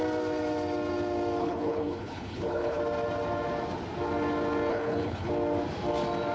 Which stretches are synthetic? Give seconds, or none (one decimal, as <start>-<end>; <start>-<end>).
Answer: 1.4-2.8; 4.7-5.3